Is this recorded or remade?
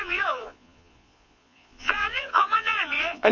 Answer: remade